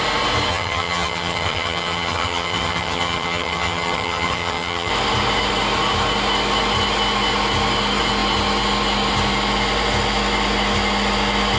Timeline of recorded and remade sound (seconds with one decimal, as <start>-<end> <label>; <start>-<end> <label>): 0.0-0.5 recorded; 0.5-4.9 remade; 4.9-11.6 recorded